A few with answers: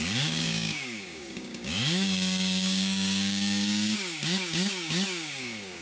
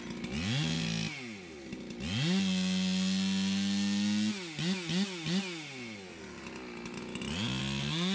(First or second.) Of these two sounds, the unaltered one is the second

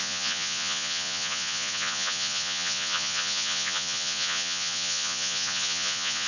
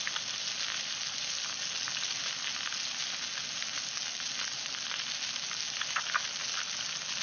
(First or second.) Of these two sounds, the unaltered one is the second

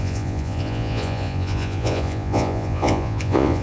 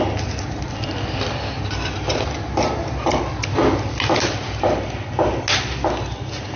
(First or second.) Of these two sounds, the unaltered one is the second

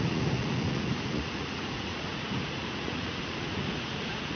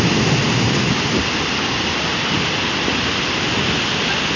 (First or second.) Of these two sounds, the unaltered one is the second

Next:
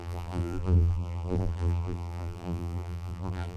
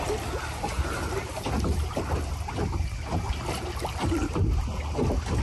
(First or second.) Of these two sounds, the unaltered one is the second